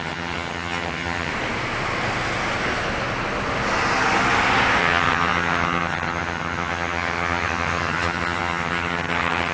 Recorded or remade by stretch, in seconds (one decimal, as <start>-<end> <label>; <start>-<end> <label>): 0.0-1.3 remade; 1.3-4.8 recorded; 4.8-9.5 remade